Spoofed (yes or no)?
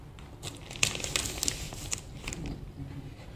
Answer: no